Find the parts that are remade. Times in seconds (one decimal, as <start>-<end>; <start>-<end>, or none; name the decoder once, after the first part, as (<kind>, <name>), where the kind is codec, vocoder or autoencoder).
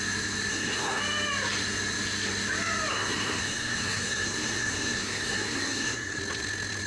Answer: 0.5-1.0 (codec, SNAC); 2.9-6.2